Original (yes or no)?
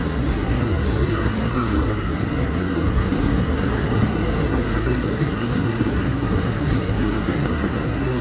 no